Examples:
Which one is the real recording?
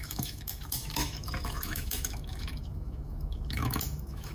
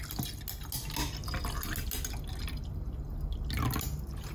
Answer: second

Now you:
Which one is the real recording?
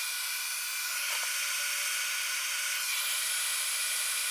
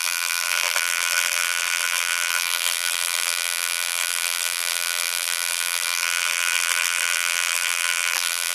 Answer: first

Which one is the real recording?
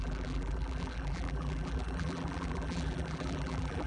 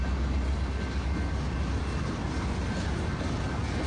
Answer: second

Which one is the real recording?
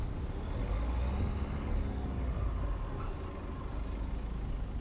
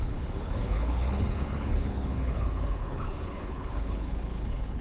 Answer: first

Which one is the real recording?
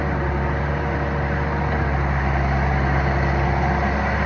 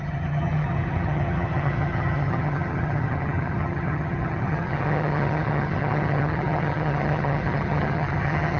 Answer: first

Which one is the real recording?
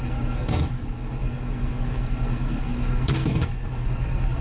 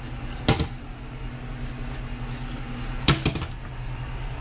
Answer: second